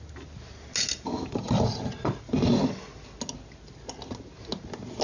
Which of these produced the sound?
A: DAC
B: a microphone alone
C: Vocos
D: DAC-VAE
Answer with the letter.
B